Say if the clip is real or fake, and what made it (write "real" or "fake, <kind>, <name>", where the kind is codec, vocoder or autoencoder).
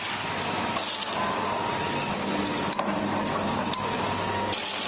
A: real